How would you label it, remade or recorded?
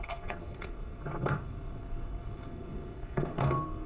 remade